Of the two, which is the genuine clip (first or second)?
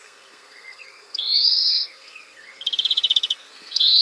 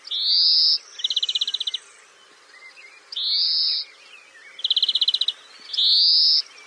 second